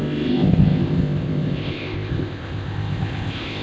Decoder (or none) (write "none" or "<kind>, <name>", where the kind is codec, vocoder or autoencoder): codec, ZipCodec